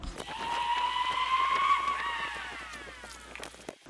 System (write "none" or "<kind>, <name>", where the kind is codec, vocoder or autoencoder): none